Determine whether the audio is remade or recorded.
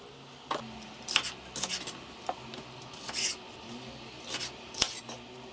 recorded